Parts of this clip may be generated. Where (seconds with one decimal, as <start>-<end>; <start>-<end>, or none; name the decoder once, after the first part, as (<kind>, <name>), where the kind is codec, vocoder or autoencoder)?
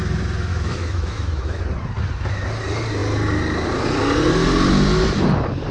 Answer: 0.5-1.6 (autoencoder, DAC-VAE)